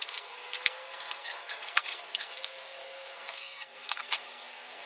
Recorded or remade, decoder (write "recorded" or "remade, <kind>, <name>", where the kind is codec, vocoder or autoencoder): remade, codec, SNAC